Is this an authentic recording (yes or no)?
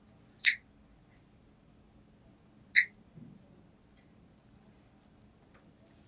yes